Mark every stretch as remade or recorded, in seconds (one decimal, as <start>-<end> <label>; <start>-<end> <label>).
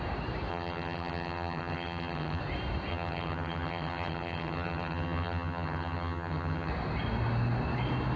0.0-0.5 recorded; 0.5-2.4 remade; 2.4-2.9 recorded; 2.9-6.7 remade; 6.7-8.2 recorded